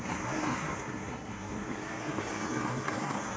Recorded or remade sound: remade